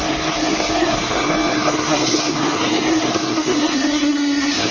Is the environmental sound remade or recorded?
remade